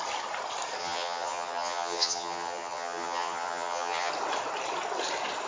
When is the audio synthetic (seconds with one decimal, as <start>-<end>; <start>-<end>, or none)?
0.8-4.1